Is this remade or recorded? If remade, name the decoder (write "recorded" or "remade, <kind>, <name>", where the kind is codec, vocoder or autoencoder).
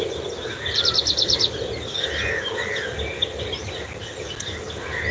recorded